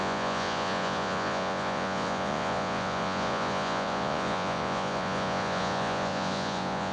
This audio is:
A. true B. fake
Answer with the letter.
B